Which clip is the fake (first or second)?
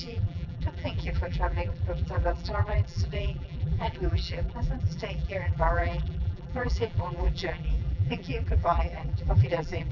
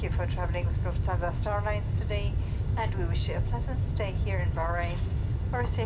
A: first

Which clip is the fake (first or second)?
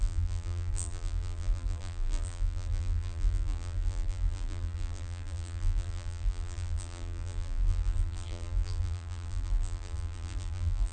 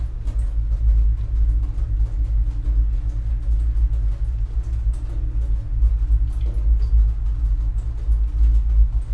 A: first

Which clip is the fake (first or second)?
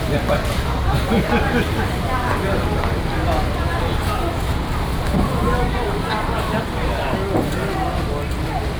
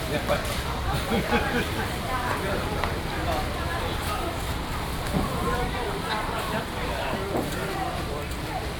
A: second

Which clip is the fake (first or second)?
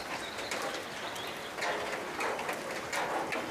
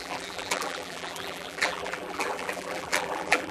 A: second